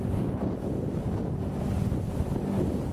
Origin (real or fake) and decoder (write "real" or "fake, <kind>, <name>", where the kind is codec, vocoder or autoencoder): real